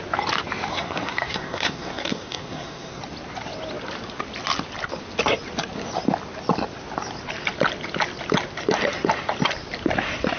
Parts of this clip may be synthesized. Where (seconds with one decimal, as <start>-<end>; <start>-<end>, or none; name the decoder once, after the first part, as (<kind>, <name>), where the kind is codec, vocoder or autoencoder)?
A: 0.7-3.0 (codec, SNAC)